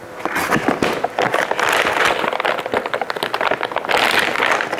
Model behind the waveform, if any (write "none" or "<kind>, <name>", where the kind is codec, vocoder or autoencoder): none